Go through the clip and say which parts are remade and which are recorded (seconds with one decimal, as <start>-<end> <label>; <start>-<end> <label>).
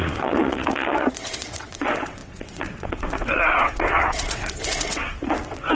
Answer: 0.0-5.7 remade